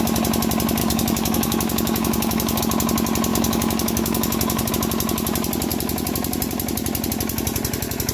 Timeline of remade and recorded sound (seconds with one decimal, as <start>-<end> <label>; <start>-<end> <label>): 0.0-0.8 recorded; 0.8-2.6 remade; 2.6-3.3 recorded; 3.3-4.7 remade; 4.7-8.1 recorded